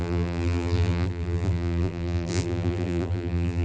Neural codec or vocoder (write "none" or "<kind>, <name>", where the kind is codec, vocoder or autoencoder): vocoder, BigVGAN v2